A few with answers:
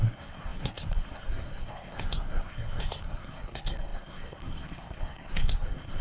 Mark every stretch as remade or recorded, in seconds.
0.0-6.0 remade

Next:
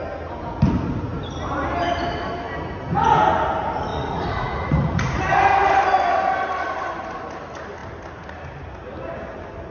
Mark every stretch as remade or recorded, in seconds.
0.0-3.9 recorded; 3.9-5.2 remade; 5.2-9.7 recorded

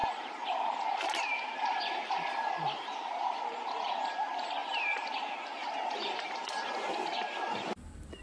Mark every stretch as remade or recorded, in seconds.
0.0-3.9 remade; 3.9-4.6 recorded; 4.6-7.0 remade; 7.0-8.2 recorded

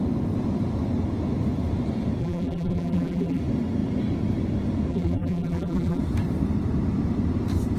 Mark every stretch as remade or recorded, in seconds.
0.0-2.2 recorded; 2.2-3.4 remade; 3.4-4.9 recorded; 4.9-6.0 remade; 6.0-7.8 recorded

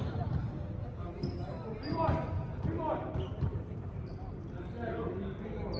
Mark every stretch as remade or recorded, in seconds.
0.0-3.5 recorded; 3.5-4.7 remade; 4.7-5.8 recorded

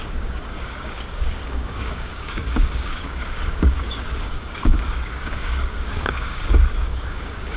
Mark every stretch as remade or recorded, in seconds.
0.0-7.6 remade

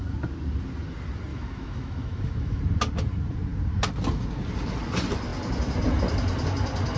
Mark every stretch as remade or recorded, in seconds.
0.0-1.3 recorded; 1.3-2.6 remade; 2.6-7.0 recorded

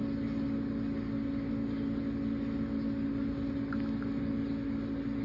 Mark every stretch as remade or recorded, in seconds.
0.0-5.2 recorded